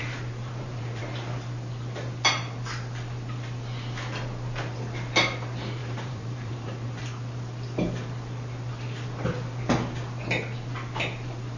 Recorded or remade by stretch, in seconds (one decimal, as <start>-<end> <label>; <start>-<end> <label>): 0.0-1.0 remade; 1.0-5.8 recorded; 5.8-7.0 remade; 7.0-11.6 recorded